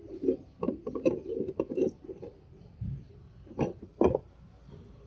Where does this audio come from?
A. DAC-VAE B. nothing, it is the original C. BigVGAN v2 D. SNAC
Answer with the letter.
B